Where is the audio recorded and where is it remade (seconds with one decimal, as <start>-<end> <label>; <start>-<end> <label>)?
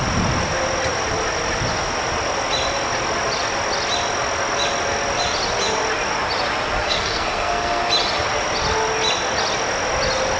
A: 0.0-6.8 recorded; 6.8-7.8 remade; 7.8-10.4 recorded